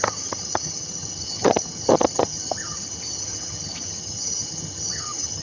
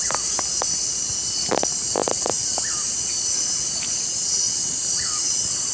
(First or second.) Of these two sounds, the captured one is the second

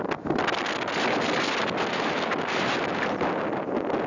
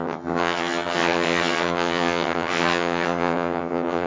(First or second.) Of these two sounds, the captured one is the first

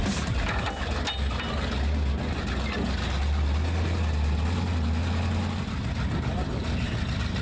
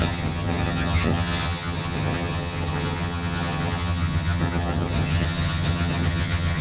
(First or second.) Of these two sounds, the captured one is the first